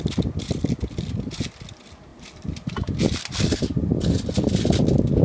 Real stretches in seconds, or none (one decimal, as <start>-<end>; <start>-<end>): 0.0-2.1; 4.0-5.2